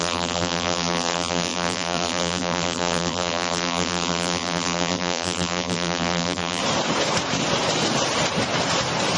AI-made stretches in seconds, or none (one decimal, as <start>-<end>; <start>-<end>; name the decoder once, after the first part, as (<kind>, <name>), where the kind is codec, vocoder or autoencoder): 0.0-6.6 (vocoder, BigVGAN v2)